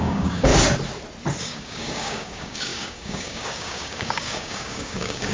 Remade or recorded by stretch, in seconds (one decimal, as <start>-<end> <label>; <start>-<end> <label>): 0.0-0.5 remade; 0.5-1.4 recorded; 1.4-5.3 remade

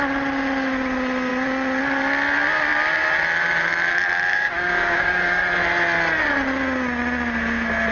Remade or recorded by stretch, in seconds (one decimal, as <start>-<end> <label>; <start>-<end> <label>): 0.0-4.3 recorded; 4.3-5.4 remade; 5.4-7.9 recorded

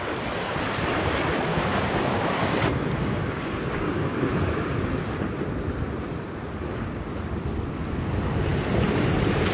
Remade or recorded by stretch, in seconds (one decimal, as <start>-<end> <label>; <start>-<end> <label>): 0.0-1.5 recorded; 1.5-4.7 remade; 4.7-9.5 recorded

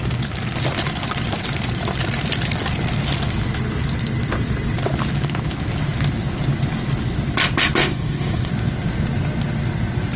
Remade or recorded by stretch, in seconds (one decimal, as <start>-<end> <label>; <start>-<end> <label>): 0.0-7.8 recorded; 7.8-8.5 remade; 8.5-10.2 recorded

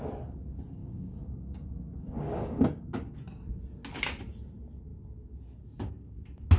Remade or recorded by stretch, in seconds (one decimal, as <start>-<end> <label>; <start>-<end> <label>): 0.0-0.8 recorded; 0.8-2.9 remade; 2.9-6.6 recorded

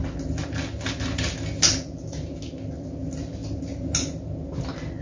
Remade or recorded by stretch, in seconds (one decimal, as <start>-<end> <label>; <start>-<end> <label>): 0.0-5.0 recorded